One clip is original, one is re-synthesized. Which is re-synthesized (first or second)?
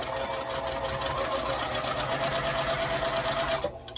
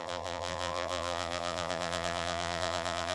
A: second